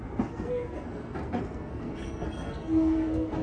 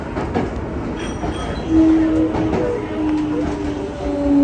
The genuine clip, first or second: second